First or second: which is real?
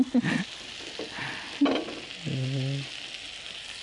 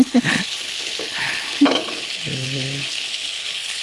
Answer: first